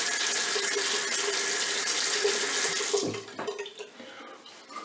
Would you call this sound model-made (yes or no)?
no